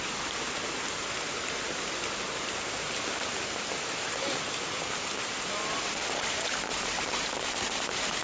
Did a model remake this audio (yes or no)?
no